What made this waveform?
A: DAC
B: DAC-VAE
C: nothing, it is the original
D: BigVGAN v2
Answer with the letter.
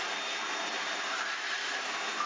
C